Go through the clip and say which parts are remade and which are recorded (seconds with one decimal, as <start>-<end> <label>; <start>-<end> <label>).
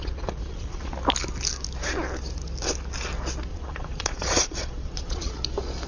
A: 0.0-0.9 remade; 0.9-3.5 recorded; 3.5-5.4 remade; 5.4-5.9 recorded